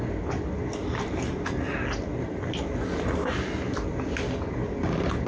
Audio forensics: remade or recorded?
recorded